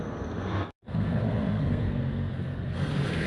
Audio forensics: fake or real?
fake